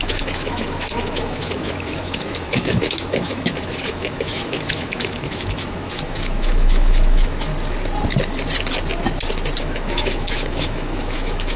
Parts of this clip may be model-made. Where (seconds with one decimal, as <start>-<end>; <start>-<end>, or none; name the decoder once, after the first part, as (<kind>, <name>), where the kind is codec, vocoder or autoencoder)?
0.0-7.5 (autoencoder, DAC-VAE); 9.6-11.6